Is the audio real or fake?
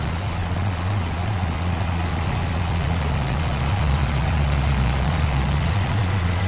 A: fake